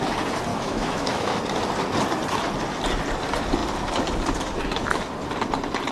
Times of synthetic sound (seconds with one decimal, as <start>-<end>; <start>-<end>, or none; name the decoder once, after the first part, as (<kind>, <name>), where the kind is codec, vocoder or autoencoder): 0.5-1.4 (autoencoder, DAC-VAE)

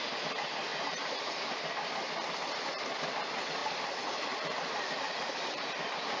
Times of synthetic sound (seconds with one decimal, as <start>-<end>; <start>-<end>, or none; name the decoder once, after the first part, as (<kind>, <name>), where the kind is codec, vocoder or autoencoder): 0.7-1.3 (vocoder, BigVGAN v2); 3.6-5.7